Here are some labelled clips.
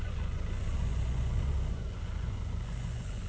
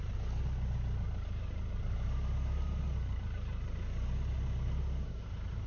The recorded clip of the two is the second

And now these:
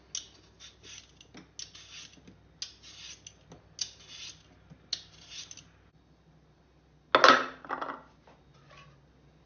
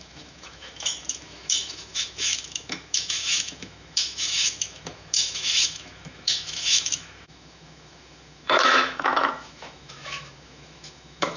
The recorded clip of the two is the first